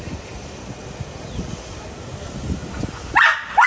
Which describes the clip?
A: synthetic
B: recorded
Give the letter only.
B